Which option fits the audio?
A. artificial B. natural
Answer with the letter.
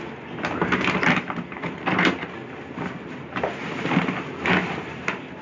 B